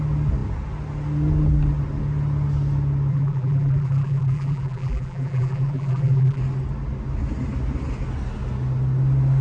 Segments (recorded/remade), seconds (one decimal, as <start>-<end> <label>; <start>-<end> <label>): 0.0-3.1 recorded; 3.1-6.4 remade; 6.4-9.4 recorded

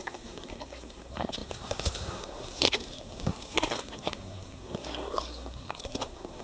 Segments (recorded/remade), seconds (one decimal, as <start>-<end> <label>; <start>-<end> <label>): 0.0-6.4 remade

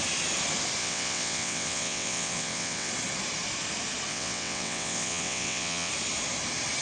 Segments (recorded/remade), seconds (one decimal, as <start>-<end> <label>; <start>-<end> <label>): 0.0-0.8 recorded; 0.8-2.9 remade; 2.9-4.1 recorded; 4.1-5.9 remade; 5.9-6.8 recorded

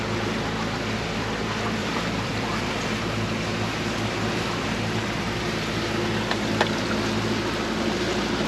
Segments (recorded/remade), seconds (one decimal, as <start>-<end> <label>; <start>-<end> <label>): 0.0-1.8 recorded; 1.8-5.8 remade; 5.8-8.5 recorded